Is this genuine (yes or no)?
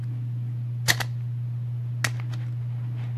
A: yes